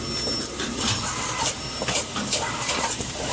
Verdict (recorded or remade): recorded